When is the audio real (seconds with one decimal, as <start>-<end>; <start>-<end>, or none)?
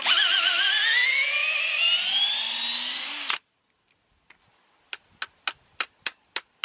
0.0-6.6